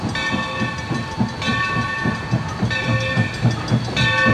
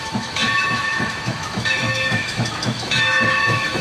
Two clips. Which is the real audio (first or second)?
first